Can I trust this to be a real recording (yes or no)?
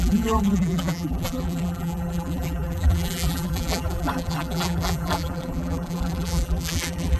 no